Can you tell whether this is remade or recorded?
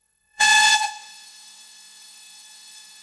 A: remade